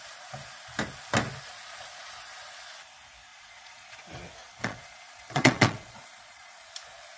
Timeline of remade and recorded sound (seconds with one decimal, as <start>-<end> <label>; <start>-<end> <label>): 0.0-3.3 recorded; 3.3-4.0 remade; 4.0-4.4 recorded; 4.4-6.7 remade; 6.7-7.2 recorded